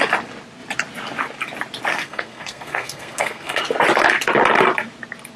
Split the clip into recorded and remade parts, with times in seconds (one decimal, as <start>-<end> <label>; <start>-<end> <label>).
0.0-1.9 recorded; 1.9-3.6 remade; 3.6-5.4 recorded